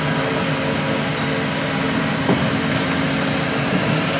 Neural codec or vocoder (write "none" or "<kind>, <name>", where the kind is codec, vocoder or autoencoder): none